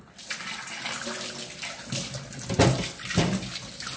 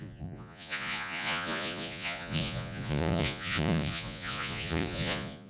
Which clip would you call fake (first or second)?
second